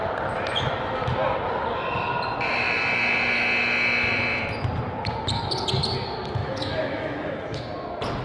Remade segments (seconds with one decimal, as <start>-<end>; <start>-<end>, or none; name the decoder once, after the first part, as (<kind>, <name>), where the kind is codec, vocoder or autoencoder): 6.4-7.6 (autoencoder, DAC-VAE)